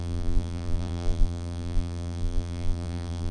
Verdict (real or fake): fake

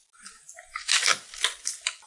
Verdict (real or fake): real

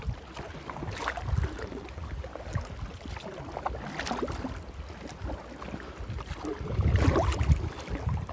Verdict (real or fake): real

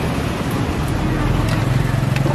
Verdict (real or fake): real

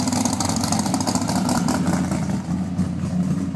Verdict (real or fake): fake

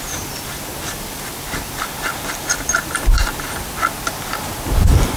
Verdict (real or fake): real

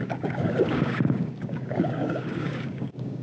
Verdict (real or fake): fake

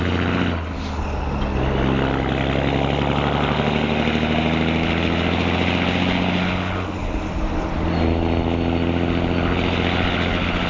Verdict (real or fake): real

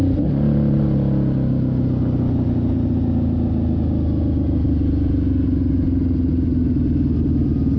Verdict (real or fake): real